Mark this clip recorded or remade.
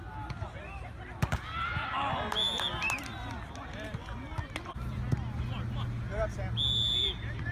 recorded